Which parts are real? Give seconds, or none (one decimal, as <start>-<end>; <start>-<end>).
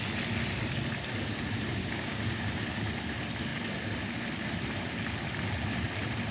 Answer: 0.0-1.8; 2.8-6.3